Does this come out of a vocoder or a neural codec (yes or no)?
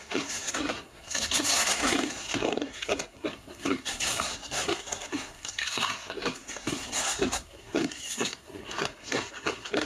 yes